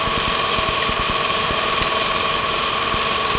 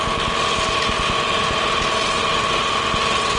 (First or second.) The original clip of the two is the second